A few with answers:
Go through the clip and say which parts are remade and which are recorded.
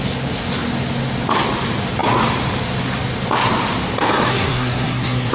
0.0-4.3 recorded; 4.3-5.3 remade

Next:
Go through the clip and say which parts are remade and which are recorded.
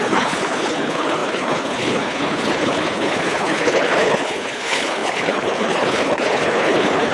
0.0-7.1 remade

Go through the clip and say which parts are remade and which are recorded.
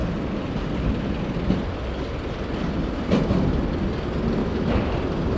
0.0-4.4 recorded; 4.4-4.9 remade; 4.9-5.4 recorded